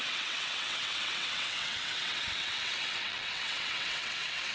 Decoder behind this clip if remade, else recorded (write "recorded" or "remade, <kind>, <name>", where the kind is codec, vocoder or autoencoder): remade, vocoder, WaveNeXt